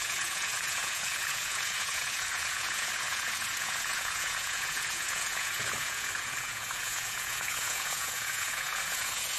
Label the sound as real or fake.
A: fake